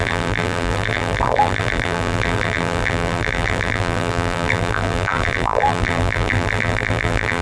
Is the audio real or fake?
fake